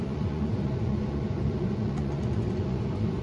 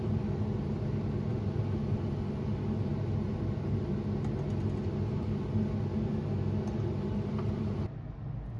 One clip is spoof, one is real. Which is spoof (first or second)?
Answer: first